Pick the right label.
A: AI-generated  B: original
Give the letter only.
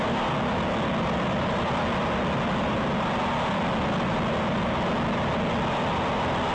B